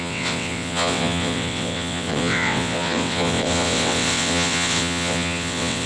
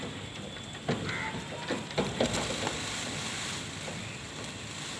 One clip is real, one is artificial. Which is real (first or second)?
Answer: second